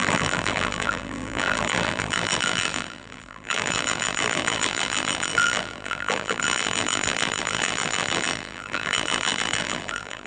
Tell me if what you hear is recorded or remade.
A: remade